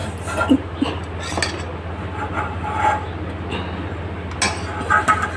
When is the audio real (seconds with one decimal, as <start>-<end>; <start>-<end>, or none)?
0.0-5.4